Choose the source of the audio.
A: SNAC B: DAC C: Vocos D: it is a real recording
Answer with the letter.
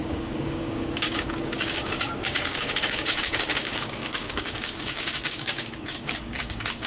B